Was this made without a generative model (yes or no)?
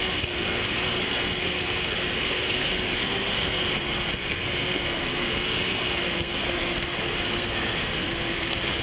no